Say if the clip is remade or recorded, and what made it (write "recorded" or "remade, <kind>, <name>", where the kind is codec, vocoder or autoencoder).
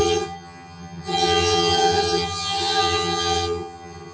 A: remade, vocoder, HiFi-GAN